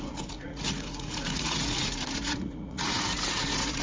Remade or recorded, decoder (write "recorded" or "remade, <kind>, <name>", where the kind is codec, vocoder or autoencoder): remade, vocoder, Vocos